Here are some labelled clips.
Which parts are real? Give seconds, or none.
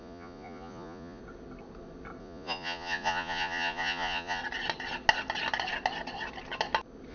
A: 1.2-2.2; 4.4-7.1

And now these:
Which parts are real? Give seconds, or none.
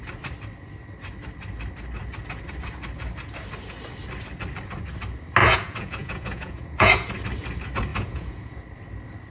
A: 0.0-5.4; 7.1-7.9; 8.6-9.3